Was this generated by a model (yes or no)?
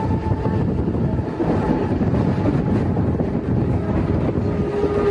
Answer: no